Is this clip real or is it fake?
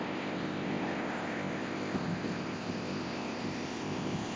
fake